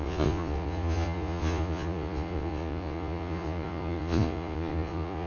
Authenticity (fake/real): fake